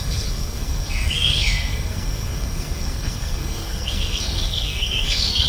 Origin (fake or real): fake